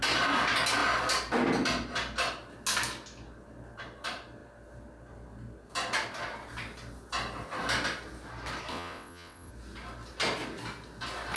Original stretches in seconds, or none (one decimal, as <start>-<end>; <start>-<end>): 0.0-8.7; 9.5-11.4

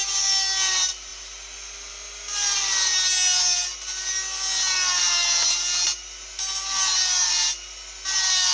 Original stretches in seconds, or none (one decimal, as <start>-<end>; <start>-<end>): 0.0-8.5

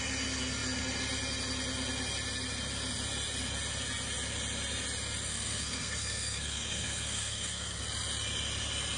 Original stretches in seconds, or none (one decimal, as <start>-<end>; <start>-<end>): 0.0-5.3; 7.8-9.0

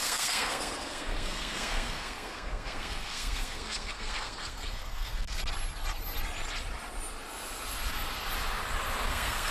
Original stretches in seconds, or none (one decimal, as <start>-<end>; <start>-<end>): 5.4-9.1

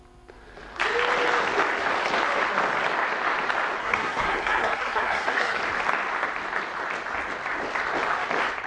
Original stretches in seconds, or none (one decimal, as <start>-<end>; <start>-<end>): 0.0-3.8; 5.6-8.7

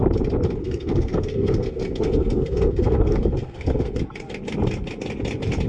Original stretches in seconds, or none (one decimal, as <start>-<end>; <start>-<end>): 0.0-0.6; 4.0-5.7

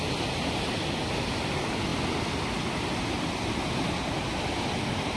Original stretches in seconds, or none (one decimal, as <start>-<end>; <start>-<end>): 0.0-5.2